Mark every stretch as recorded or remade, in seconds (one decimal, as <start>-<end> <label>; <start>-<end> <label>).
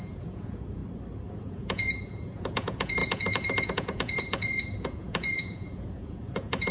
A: 0.0-0.8 remade; 0.8-1.3 recorded; 1.3-6.7 remade